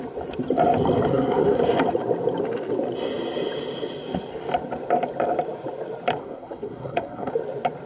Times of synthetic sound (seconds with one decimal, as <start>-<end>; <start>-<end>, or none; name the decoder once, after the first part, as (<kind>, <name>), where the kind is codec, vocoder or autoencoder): 1.1-1.6 (codec, SNAC); 6.2-7.3